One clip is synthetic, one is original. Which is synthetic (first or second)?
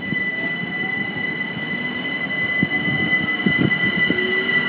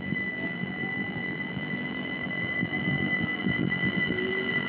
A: second